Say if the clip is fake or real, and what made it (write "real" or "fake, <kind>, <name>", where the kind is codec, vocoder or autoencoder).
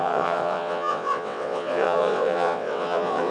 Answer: fake, vocoder, WaveNeXt